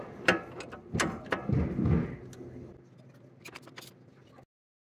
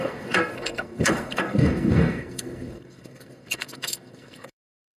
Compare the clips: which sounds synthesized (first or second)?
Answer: second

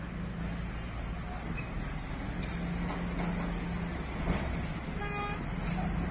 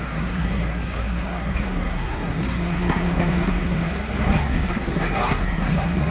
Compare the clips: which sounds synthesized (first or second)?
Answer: second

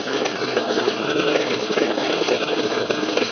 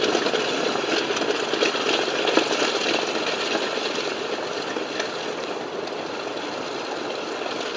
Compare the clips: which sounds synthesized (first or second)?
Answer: first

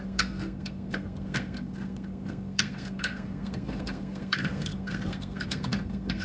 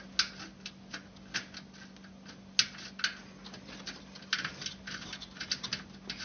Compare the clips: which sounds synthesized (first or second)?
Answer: first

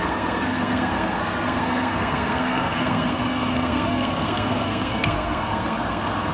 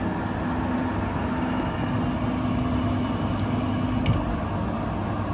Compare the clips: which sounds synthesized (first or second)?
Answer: first